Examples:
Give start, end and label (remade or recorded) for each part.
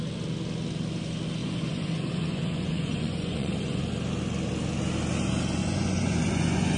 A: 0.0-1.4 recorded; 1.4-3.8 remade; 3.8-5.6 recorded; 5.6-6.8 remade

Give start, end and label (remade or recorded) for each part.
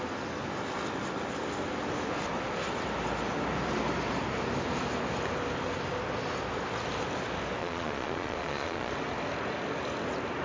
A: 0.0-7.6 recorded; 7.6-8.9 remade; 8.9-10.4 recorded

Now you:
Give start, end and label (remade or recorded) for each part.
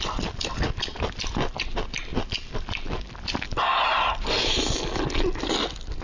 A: 0.0-6.0 recorded